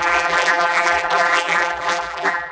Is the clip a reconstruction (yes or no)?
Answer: yes